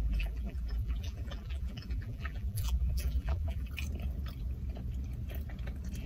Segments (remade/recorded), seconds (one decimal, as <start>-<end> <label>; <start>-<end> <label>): 0.0-3.7 remade; 3.7-6.1 recorded